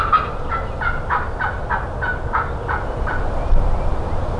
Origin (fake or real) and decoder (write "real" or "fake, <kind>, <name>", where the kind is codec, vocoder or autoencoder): real